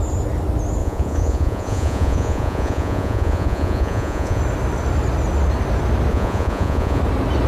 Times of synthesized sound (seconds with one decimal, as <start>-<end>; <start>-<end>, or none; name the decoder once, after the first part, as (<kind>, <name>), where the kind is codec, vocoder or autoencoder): 0.8-4.4 (vocoder, Vocos); 6.1-7.0